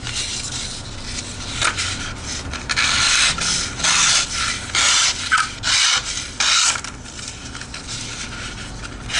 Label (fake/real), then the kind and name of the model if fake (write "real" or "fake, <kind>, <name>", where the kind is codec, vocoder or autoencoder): real